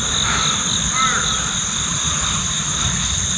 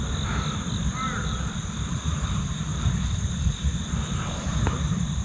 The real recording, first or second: first